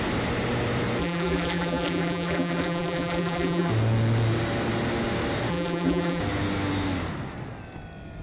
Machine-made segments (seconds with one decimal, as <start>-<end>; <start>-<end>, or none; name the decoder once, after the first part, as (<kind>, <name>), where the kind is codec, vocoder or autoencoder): 1.0-3.7 (vocoder, BigVGAN v2); 5.5-6.2